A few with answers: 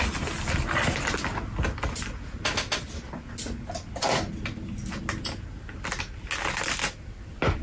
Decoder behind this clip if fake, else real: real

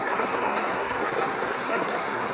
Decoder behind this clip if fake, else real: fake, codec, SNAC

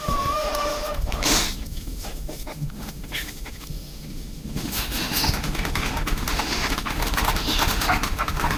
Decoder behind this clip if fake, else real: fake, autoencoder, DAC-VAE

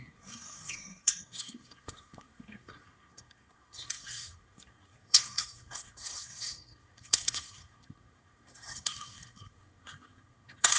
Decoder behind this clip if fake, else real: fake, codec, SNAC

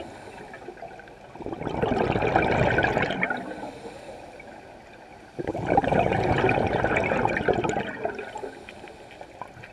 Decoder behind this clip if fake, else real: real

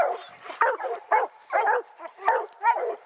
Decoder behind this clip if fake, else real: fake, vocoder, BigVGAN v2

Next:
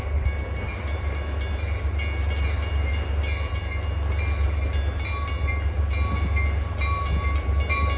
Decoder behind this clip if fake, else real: real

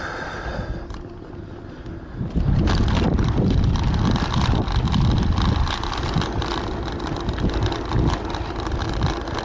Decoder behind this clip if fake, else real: real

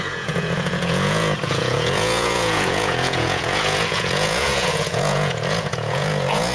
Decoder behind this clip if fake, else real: fake, vocoder, Vocos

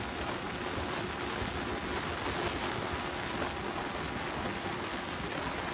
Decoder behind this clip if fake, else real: real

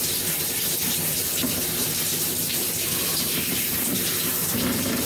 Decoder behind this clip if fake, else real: fake, vocoder, BigVGAN v2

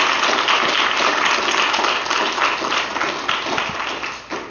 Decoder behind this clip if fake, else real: real